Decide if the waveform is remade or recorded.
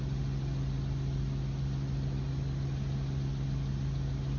recorded